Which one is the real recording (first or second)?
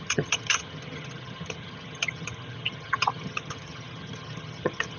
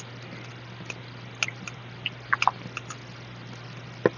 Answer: second